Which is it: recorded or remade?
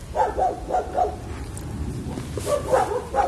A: recorded